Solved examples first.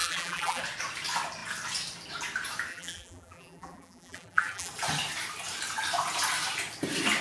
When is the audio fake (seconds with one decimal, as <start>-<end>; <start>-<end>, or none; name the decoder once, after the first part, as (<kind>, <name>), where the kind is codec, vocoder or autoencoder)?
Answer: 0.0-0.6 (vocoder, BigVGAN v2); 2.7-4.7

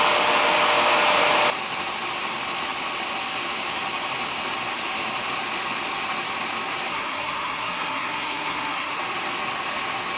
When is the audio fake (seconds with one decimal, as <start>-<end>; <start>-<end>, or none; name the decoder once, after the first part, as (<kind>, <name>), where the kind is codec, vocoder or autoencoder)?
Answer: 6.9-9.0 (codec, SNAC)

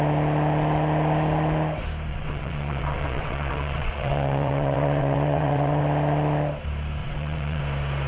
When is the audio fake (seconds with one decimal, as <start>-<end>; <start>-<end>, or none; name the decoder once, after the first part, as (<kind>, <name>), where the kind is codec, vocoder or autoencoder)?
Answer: 2.1-5.8 (vocoder, WaveNeXt); 7.0-7.6